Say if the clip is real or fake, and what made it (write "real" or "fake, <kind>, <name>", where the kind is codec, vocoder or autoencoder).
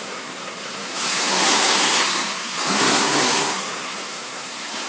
fake, codec, SNAC